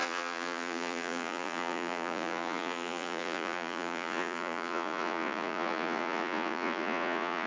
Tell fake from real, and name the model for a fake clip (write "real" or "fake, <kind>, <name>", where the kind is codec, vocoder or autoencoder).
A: fake, vocoder, Vocos